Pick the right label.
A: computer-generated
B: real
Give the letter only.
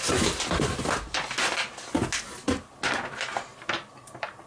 B